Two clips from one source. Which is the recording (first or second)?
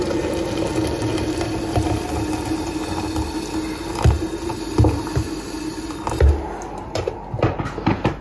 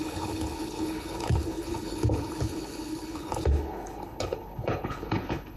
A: first